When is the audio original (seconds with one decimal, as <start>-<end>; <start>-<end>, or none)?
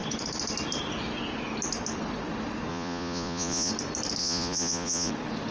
0.0-2.7; 3.7-4.2; 5.1-5.5